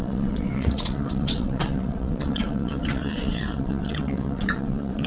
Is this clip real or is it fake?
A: fake